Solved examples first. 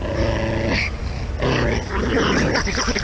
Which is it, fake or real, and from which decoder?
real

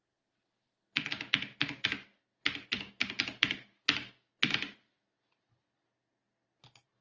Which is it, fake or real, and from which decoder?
real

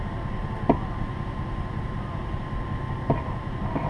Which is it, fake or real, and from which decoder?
real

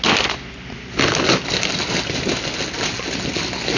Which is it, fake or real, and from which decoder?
real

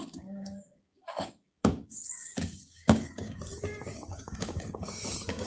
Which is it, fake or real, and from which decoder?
fake, codec, DAC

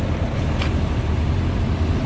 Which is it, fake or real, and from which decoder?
real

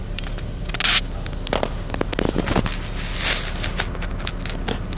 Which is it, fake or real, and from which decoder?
real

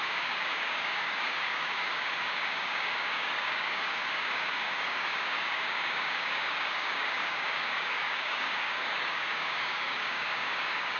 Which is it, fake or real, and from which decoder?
fake, codec, DAC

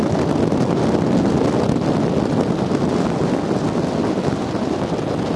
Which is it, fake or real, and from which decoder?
real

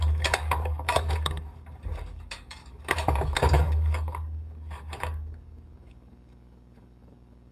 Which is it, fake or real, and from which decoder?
fake, codec, DAC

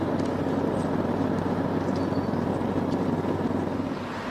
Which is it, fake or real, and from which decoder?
real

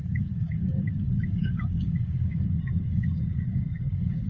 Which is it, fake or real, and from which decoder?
fake, codec, DAC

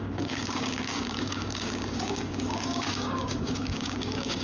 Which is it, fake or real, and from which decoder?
fake, codec, DAC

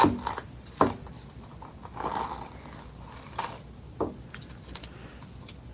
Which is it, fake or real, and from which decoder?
real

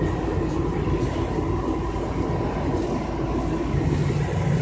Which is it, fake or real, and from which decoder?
real